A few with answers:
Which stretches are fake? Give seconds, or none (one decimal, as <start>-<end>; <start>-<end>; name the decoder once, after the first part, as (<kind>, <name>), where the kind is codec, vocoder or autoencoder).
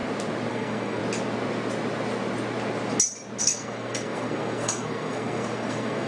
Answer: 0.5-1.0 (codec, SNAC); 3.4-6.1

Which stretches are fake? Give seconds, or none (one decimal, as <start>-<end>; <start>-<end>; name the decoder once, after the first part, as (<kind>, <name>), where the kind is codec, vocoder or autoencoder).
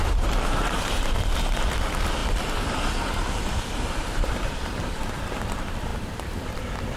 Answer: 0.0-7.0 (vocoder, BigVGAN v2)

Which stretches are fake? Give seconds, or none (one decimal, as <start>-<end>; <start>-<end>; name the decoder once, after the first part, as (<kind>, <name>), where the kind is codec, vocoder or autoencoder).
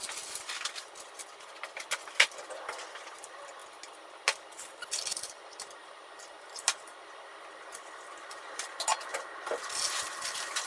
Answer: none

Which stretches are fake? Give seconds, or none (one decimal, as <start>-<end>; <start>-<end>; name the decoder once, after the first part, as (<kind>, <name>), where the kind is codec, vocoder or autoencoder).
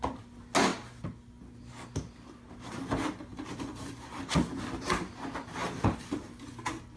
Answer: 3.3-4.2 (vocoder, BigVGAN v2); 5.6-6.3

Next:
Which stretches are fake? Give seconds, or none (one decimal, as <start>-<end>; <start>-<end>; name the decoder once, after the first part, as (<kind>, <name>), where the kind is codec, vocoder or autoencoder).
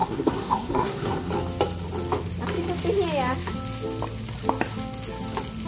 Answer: 0.0-1.3 (codec, SNAC)